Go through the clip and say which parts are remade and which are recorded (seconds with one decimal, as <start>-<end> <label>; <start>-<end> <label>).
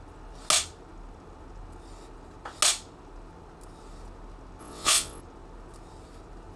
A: 0.0-4.6 recorded; 4.6-5.2 remade; 5.2-6.6 recorded